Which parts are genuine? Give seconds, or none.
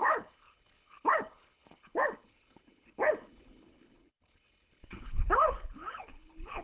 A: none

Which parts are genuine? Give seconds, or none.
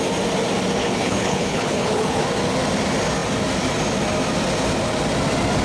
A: 0.0-0.8; 2.2-5.6